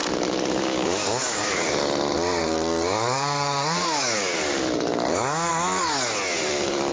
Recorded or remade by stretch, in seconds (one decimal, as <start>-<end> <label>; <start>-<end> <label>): 0.0-1.7 remade; 1.7-2.4 recorded; 2.4-5.5 remade; 5.5-6.9 recorded